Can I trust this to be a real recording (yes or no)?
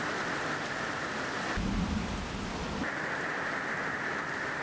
yes